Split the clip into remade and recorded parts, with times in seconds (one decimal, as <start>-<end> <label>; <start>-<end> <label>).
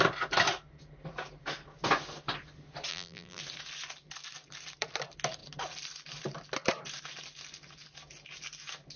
0.0-2.9 recorded; 2.9-3.4 remade; 3.4-9.0 recorded